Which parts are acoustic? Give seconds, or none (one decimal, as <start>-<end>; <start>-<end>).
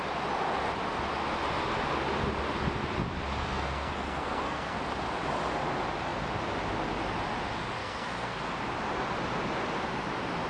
0.0-3.4; 4.8-7.8; 8.4-10.5